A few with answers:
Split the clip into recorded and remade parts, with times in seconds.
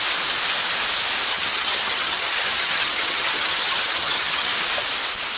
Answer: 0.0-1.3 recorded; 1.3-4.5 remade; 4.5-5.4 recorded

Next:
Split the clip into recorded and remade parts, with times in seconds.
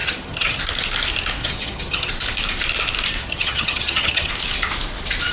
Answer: 0.0-0.6 remade; 0.6-1.4 recorded; 1.4-2.1 remade; 2.1-3.2 recorded; 3.2-4.3 remade; 4.3-5.3 recorded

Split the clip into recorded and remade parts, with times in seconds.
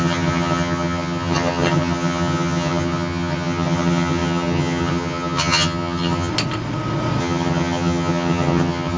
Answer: 0.0-6.3 remade; 6.3-7.2 recorded; 7.2-9.0 remade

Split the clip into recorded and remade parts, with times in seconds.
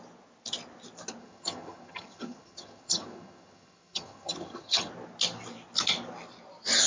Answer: 0.0-1.2 recorded; 1.2-4.9 remade; 4.9-6.9 recorded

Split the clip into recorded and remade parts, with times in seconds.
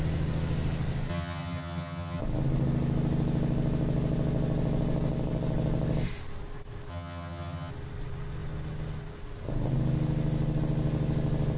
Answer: 0.0-1.1 recorded; 1.1-2.2 remade; 2.2-6.9 recorded; 6.9-7.7 remade; 7.7-11.6 recorded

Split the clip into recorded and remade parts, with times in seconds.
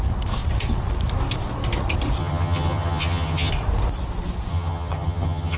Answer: 0.0-2.2 recorded; 2.2-3.5 remade; 3.5-4.5 recorded; 4.5-5.6 remade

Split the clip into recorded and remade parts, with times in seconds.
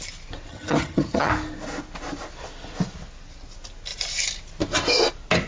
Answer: 0.0-0.5 recorded; 0.5-1.3 remade; 1.3-5.5 recorded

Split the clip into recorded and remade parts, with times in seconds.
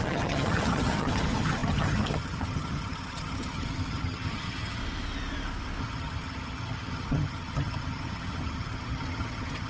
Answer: 0.0-4.8 remade; 4.8-5.8 recorded; 5.8-9.7 remade